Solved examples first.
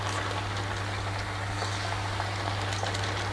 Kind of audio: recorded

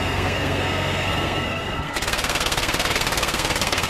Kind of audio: remade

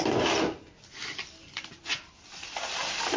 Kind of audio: recorded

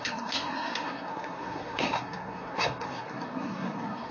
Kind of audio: remade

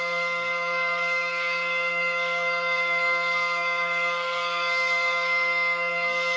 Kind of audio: remade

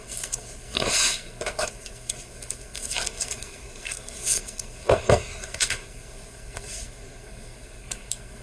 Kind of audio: remade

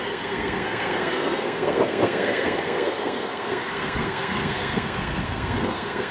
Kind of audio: remade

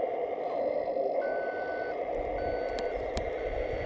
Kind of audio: recorded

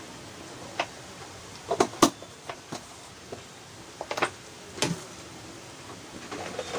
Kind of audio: recorded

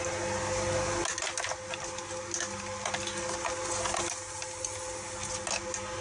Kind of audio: recorded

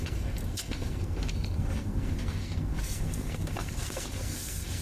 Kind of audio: remade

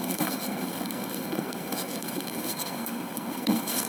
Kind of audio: remade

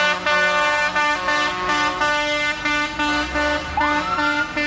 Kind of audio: recorded